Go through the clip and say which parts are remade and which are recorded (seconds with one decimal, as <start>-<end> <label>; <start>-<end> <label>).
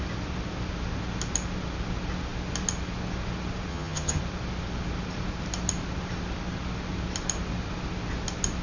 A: 0.0-3.7 recorded; 3.7-4.2 remade; 4.2-8.6 recorded